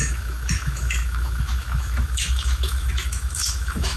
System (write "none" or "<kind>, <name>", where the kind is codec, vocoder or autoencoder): autoencoder, DAC-VAE